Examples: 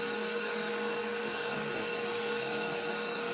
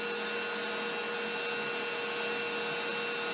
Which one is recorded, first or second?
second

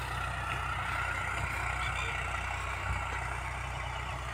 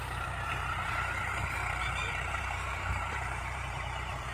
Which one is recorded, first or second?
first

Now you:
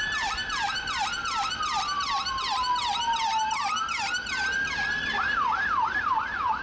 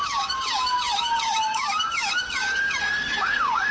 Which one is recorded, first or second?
first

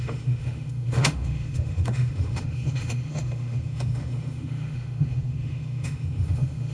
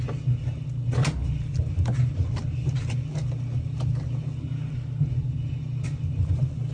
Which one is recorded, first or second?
second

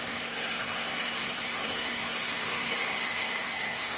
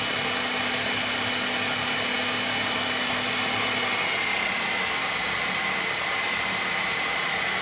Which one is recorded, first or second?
second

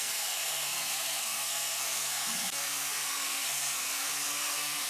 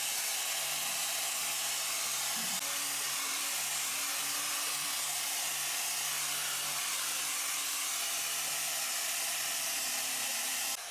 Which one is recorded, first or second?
second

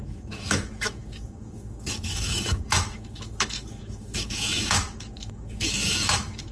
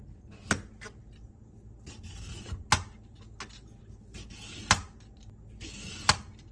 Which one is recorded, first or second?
second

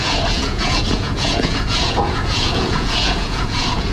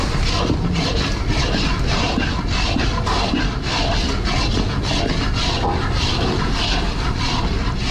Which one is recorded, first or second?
second